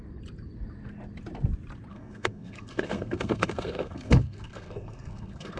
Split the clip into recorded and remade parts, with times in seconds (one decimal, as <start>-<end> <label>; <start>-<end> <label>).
0.0-1.9 recorded; 1.9-5.6 remade